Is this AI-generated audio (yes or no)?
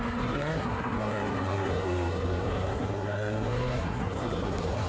yes